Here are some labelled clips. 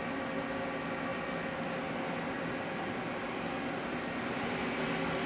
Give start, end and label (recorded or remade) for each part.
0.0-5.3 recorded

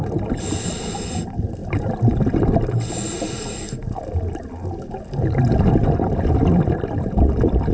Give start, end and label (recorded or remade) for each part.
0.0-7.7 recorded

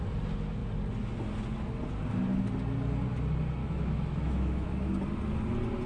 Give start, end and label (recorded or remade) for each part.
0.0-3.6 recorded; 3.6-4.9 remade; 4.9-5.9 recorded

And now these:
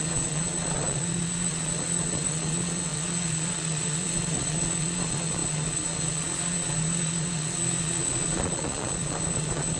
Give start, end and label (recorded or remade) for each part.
0.0-9.8 remade